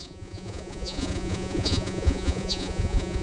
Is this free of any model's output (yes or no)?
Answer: no